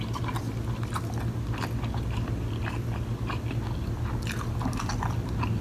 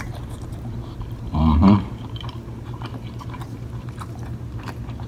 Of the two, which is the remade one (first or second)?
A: second